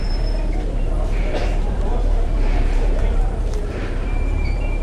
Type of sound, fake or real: fake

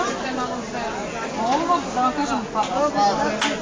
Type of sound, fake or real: real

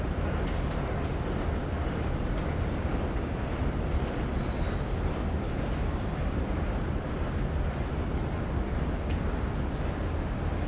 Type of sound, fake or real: real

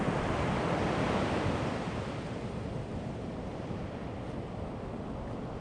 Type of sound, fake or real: real